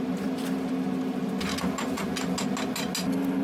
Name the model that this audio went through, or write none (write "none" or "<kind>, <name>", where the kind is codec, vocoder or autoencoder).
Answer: none